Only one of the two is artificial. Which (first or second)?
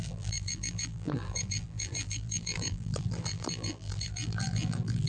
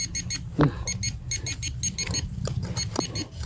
first